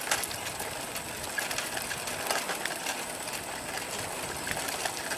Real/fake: real